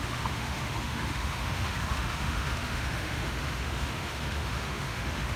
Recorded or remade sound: remade